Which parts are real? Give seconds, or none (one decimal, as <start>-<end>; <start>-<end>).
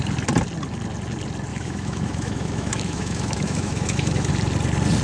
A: 0.0-1.5; 4.3-5.0